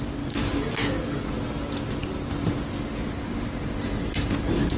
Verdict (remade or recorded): recorded